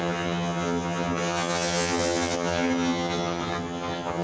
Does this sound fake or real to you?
fake